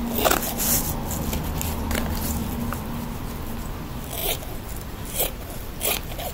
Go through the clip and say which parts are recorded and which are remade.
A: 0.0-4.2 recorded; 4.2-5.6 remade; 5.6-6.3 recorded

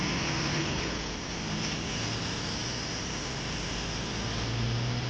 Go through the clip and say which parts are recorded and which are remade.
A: 0.0-0.5 recorded; 0.5-1.1 remade; 1.1-5.1 recorded

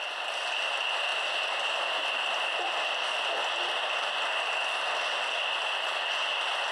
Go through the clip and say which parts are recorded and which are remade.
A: 0.0-6.7 recorded